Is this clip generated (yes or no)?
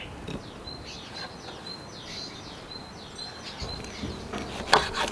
no